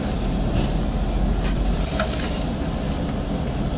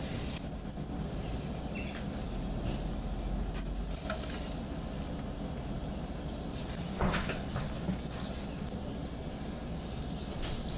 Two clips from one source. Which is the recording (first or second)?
second